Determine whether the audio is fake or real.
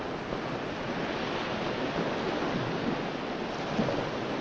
real